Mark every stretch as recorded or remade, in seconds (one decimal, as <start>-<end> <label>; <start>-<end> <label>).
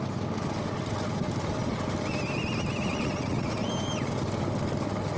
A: 0.0-2.8 recorded; 2.8-3.7 remade; 3.7-5.2 recorded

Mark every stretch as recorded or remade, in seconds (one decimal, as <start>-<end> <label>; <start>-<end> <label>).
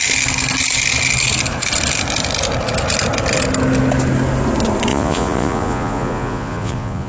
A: 0.0-4.9 recorded; 4.9-7.1 remade